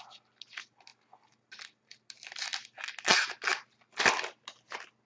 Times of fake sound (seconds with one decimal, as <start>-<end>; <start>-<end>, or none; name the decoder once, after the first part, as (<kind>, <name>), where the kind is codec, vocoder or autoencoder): none